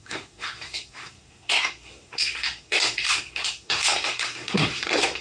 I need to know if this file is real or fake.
fake